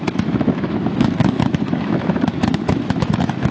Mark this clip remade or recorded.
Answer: remade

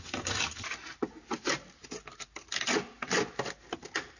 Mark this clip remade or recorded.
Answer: recorded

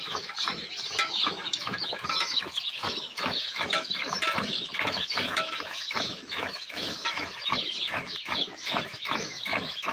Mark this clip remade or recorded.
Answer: remade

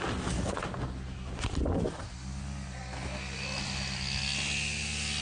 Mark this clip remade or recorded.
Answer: recorded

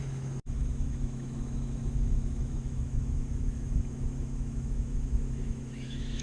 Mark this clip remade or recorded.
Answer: remade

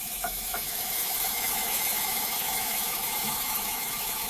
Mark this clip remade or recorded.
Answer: remade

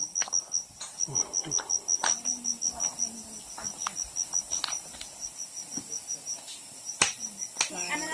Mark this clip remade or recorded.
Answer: recorded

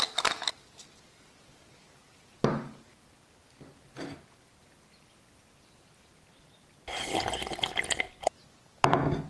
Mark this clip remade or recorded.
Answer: recorded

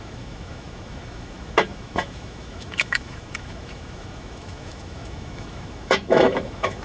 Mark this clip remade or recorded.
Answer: remade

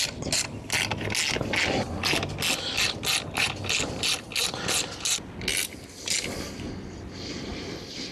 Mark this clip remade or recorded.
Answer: recorded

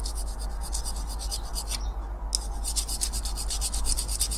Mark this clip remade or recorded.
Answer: recorded